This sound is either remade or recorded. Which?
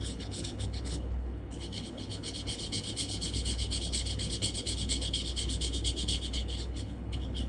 remade